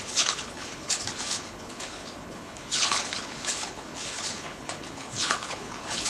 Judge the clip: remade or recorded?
remade